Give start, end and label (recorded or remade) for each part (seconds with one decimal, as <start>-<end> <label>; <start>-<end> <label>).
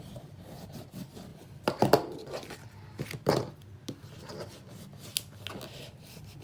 0.0-1.3 recorded; 1.3-2.6 remade; 2.6-6.4 recorded